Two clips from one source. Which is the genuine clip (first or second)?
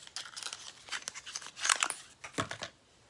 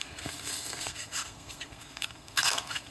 first